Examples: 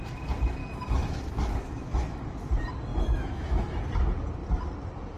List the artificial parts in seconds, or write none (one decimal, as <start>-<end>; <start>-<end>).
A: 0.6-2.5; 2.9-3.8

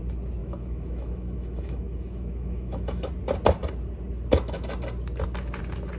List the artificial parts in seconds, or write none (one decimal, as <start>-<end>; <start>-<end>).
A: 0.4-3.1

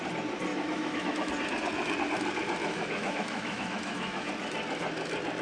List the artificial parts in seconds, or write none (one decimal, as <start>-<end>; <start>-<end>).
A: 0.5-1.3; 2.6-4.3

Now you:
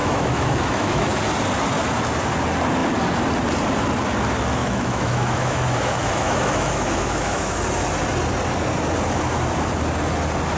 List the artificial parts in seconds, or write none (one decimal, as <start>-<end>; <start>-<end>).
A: 0.0-1.2; 4.6-7.6

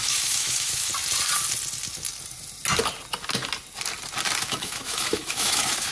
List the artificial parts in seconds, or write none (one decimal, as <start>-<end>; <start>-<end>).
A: 0.0-0.9; 4.4-5.9

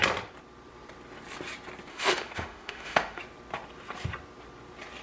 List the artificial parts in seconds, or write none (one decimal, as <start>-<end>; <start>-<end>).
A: 1.9-3.2